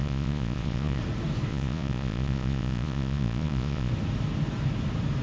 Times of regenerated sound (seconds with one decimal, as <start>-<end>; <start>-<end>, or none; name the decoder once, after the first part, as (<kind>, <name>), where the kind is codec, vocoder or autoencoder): 0.0-1.0 (vocoder, Vocos); 1.5-3.9

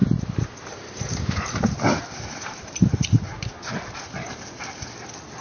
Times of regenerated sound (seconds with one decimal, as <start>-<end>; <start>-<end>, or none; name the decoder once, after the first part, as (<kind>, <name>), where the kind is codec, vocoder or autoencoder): 0.0-3.2 (vocoder, BigVGAN v2)

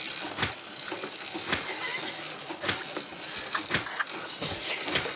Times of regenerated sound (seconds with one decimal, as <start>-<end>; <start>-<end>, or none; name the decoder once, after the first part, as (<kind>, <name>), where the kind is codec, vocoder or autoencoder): none

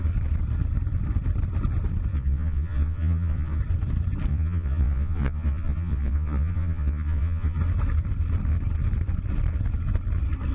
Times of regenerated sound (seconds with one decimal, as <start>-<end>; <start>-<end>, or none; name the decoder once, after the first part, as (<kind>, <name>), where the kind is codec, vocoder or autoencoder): 2.1-3.6 (vocoder, Vocos); 4.3-7.6